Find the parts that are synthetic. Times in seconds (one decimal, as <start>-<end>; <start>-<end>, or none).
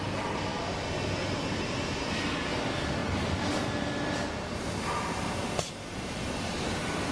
0.0-0.5; 2.6-7.1